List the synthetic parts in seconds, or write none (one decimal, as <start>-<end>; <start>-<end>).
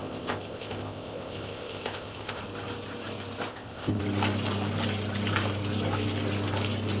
0.0-2.4; 3.5-4.0